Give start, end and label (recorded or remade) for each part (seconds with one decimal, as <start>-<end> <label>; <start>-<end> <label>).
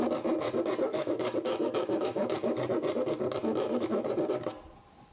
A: 0.0-0.9 recorded; 0.9-2.5 remade; 2.5-3.4 recorded; 3.4-4.1 remade; 4.1-5.1 recorded